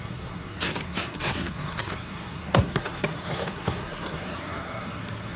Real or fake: fake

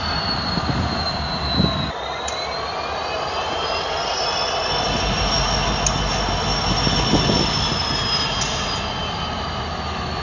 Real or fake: real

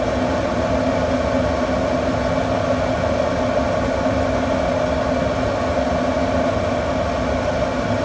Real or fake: real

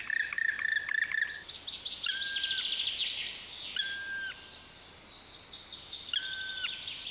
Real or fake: real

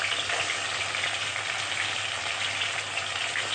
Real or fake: real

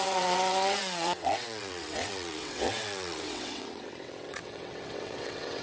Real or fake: fake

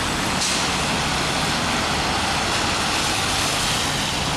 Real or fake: real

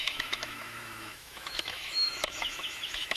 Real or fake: fake